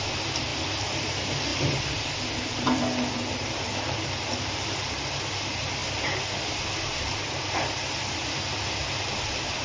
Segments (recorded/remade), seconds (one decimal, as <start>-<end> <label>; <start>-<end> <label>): 0.0-0.5 recorded; 0.5-1.1 remade; 1.1-1.5 recorded; 1.5-4.9 remade; 4.9-9.6 recorded